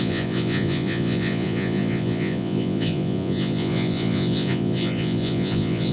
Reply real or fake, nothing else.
fake